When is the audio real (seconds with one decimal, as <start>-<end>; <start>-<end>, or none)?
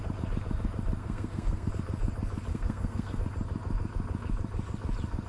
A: 0.0-1.0; 1.7-2.5; 3.2-5.3